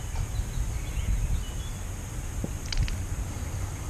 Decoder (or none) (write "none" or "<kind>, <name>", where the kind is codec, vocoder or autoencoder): none